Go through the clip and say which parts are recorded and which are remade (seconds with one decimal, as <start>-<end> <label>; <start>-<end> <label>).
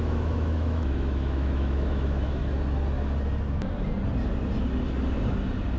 0.0-2.4 remade; 2.4-5.8 recorded